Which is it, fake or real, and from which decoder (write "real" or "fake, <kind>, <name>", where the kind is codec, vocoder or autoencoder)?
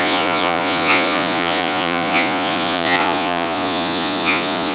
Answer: fake, vocoder, Vocos